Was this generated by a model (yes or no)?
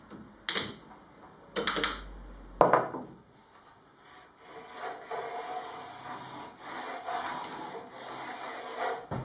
no